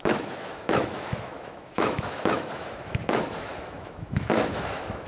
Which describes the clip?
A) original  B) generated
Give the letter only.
B